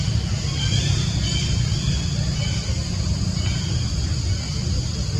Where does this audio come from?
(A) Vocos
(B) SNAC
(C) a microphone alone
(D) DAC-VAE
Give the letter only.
C